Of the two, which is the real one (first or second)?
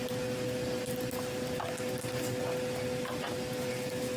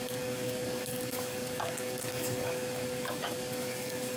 first